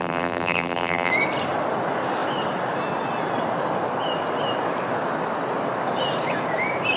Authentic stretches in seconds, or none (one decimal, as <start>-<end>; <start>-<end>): 1.1-7.0